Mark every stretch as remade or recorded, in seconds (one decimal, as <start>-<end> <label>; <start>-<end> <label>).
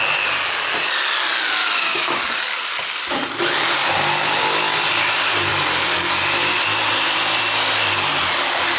0.0-1.6 recorded; 1.6-2.2 remade; 2.2-8.8 recorded